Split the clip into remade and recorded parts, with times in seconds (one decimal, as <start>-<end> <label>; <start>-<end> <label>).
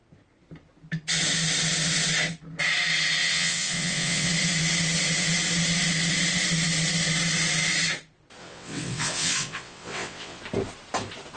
0.0-3.2 recorded; 3.2-4.3 remade; 4.3-8.4 recorded; 8.4-10.4 remade; 10.4-11.4 recorded